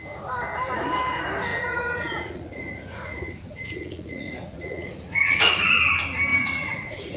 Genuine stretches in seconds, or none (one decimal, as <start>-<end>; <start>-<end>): 0.0-1.5; 5.8-6.3